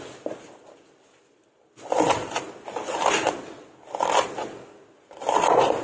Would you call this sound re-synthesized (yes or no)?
no